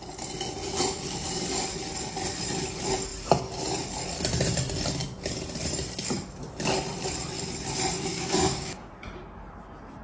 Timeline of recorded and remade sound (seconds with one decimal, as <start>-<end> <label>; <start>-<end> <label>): 0.0-8.1 recorded; 8.1-8.9 remade; 8.9-10.0 recorded